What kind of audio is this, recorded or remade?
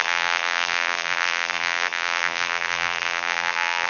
remade